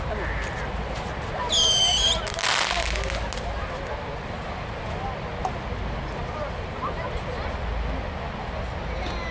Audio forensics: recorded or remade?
recorded